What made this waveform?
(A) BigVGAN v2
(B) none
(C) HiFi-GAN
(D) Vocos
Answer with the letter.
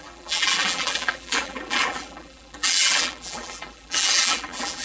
A